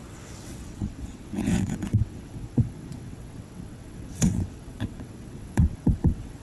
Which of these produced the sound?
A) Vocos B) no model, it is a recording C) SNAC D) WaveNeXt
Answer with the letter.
D